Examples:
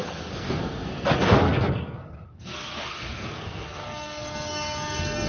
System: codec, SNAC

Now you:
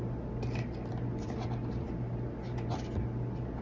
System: none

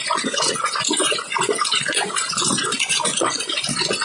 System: vocoder, Vocos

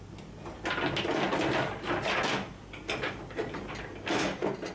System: none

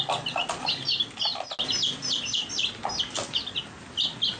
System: none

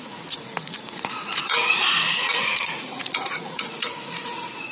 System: vocoder, Vocos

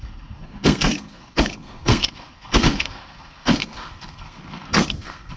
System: codec, SNAC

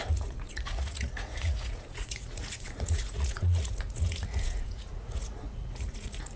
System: vocoder, Vocos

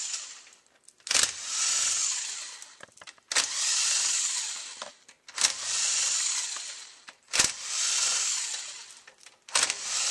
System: none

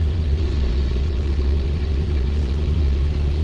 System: vocoder, Vocos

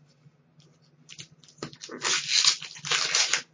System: none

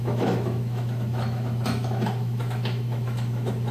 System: autoencoder, DAC-VAE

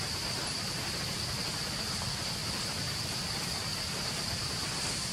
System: none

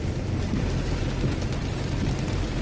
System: none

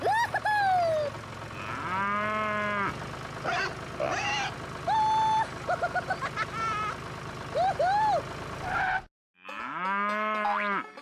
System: none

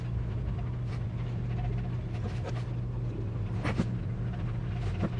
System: none